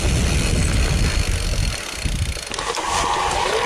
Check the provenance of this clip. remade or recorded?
recorded